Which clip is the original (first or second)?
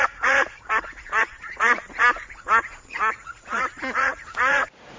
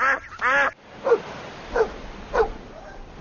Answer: second